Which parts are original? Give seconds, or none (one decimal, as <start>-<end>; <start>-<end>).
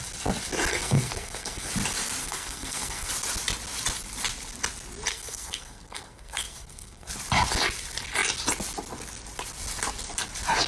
0.0-0.7; 1.7-2.2; 3.1-5.1; 7.1-10.7